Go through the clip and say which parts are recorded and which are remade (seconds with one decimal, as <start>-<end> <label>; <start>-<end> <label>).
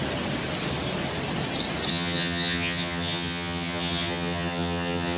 0.0-1.9 recorded; 1.9-5.2 remade